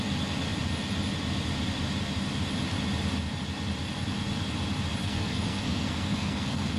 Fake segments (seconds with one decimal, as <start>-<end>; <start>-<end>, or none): 5.0-6.8